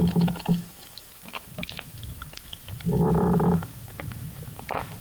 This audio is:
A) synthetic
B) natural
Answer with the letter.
A